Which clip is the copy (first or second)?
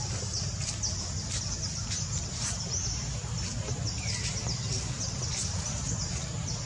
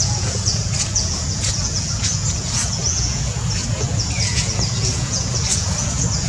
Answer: second